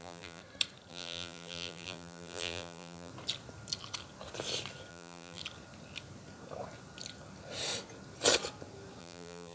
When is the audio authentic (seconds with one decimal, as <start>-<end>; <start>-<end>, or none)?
0.4-0.9; 3.1-4.9; 5.4-9.0